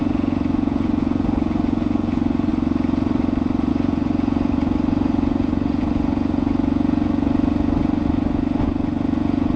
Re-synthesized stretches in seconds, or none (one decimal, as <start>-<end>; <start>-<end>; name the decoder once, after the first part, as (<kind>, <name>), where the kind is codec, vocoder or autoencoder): 0.0-2.5 (vocoder, Vocos); 3.7-9.6